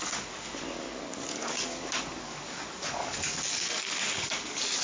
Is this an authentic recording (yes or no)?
no